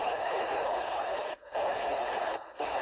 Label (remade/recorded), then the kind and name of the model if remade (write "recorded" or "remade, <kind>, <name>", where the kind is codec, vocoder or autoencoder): remade, codec, HILCodec